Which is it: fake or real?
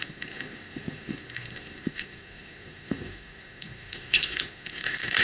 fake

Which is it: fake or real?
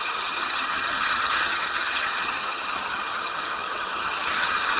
fake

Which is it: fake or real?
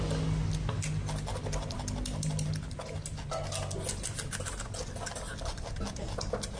real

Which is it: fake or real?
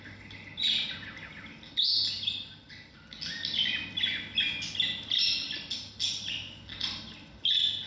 real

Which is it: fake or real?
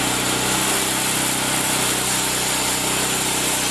real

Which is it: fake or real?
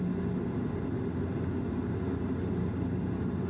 real